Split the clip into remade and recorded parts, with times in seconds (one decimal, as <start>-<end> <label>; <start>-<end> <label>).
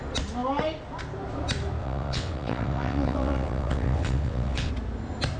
0.0-1.8 recorded; 1.8-4.7 remade; 4.7-5.4 recorded